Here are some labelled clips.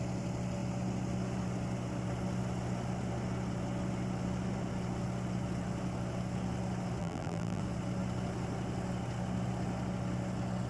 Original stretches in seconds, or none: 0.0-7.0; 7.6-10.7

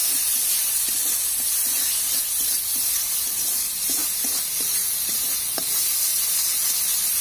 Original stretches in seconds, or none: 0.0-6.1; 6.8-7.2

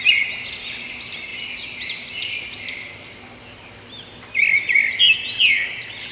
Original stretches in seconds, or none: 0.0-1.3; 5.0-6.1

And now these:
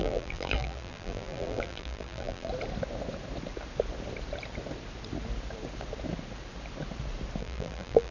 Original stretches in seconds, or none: 2.5-7.4

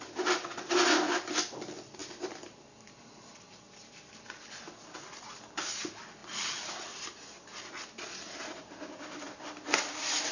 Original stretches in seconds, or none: 0.0-10.3

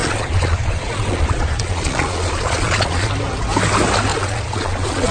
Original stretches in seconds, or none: 3.1-4.1